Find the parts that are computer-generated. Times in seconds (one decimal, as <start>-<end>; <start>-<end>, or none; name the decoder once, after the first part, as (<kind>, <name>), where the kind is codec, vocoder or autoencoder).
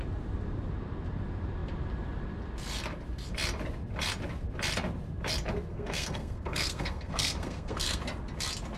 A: 5.7-8.0 (codec, SNAC)